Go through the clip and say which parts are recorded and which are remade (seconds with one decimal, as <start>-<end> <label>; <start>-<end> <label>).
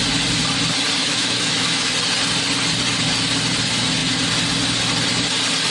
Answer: 0.0-1.0 recorded; 1.0-1.9 remade; 1.9-5.7 recorded